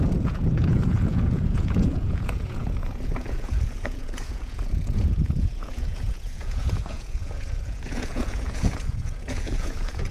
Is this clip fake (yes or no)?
yes